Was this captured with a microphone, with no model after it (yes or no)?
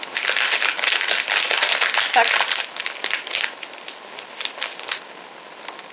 yes